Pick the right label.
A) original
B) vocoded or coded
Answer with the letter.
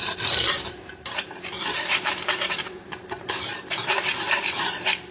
B